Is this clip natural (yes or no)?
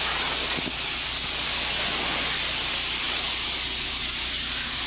yes